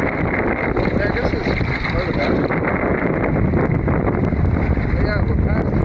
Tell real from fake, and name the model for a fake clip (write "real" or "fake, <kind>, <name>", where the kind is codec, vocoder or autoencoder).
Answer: real